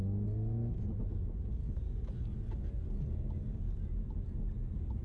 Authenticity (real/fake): real